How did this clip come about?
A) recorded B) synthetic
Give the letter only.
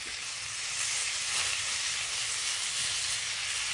A